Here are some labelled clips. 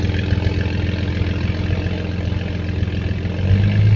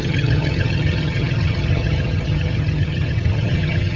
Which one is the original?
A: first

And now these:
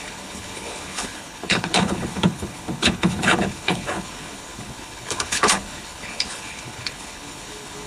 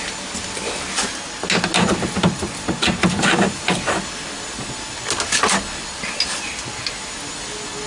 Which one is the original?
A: second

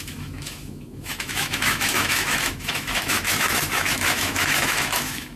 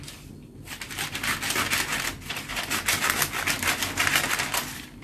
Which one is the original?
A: second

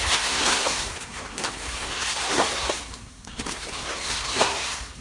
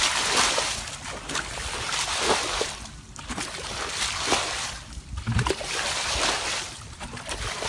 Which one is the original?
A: second